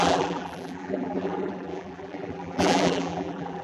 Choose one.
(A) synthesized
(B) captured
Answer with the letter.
A